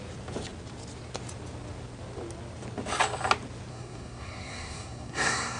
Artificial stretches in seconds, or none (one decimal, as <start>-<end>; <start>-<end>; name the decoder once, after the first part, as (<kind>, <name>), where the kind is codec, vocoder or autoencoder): 3.7-5.6 (codec, SNAC)